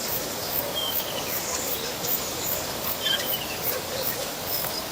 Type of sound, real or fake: fake